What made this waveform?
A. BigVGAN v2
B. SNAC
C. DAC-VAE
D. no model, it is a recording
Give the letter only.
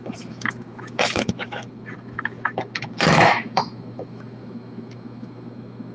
C